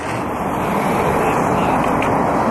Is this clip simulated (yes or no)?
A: no